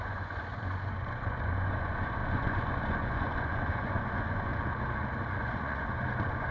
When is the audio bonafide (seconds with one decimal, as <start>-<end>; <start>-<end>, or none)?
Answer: 4.5-5.4